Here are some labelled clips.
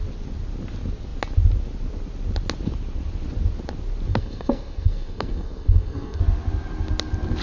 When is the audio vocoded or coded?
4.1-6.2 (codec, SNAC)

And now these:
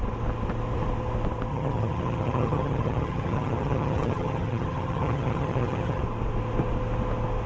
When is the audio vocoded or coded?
1.5-6.0 (vocoder, HiFi-GAN)

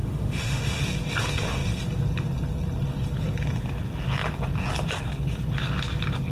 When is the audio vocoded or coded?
0.0-0.8 (autoencoder, DAC-VAE)

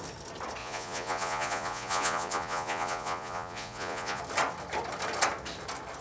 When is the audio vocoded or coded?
0.6-4.2 (vocoder, Vocos)

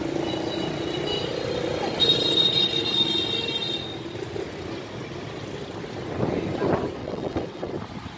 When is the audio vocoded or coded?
7.0-7.7 (vocoder, WaveNeXt)

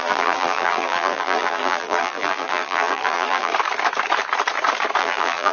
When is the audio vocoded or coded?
0.0-3.5 (vocoder, BigVGAN v2); 5.0-5.5

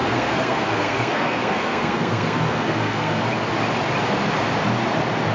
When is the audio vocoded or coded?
0.0-3.2 (codec, SNAC)